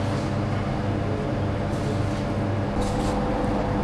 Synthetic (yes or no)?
no